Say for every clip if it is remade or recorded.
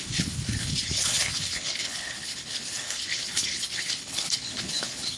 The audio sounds remade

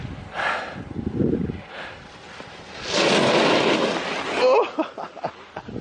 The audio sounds recorded